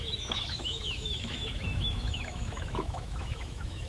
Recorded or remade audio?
remade